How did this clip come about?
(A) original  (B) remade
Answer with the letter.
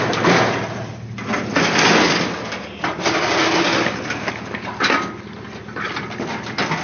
A